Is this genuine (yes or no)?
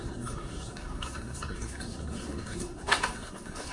no